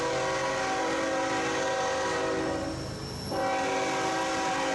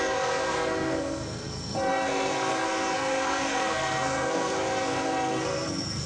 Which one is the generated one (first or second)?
second